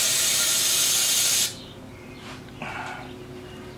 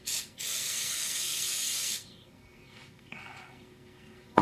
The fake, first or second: second